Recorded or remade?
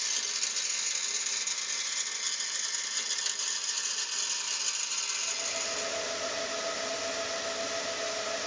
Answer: recorded